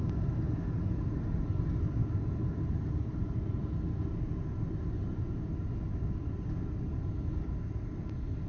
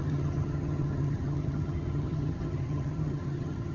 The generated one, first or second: second